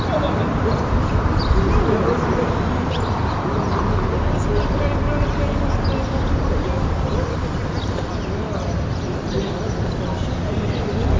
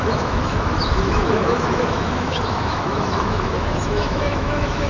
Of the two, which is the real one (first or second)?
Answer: first